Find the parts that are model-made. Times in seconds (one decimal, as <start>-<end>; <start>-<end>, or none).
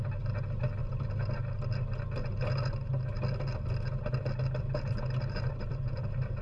none